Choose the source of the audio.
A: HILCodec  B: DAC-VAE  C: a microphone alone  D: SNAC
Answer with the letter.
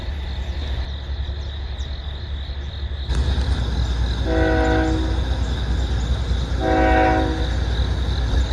C